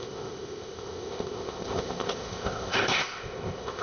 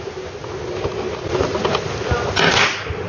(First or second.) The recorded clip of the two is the second